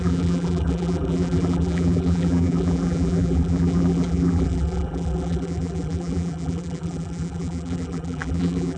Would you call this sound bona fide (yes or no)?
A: no